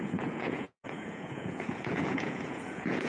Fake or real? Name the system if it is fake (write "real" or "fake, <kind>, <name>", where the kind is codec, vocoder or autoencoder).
fake, vocoder, Vocos